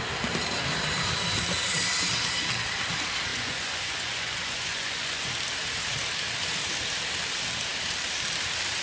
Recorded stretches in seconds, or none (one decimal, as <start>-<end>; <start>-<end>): 0.0-3.3; 5.3-8.8